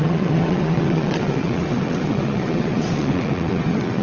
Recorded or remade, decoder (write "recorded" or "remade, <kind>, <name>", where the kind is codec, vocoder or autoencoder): remade, vocoder, WaveNeXt